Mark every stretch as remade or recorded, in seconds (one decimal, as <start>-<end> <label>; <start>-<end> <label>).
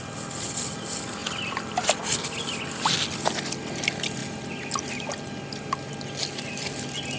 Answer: 0.0-7.2 recorded